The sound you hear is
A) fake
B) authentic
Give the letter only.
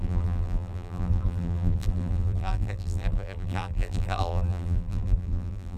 A